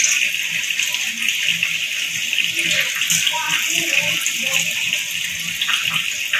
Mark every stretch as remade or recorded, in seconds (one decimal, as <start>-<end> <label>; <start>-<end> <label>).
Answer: 0.0-6.4 recorded